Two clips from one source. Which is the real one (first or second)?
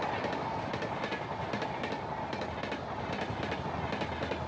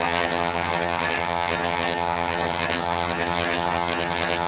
first